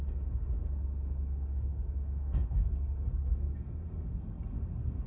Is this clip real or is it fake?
fake